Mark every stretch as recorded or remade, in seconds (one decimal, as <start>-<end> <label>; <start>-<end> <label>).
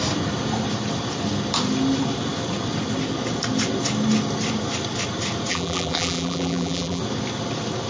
0.0-5.5 recorded; 5.5-7.0 remade; 7.0-7.9 recorded